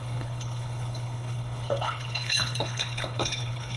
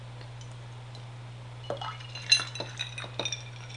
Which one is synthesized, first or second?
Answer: first